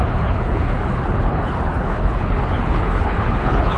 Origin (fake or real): fake